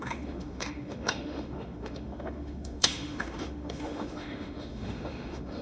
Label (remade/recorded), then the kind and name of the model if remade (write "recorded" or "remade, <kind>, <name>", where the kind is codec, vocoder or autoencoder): remade, autoencoder, DAC-VAE